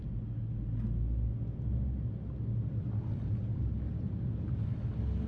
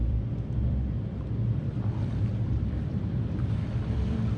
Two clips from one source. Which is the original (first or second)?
first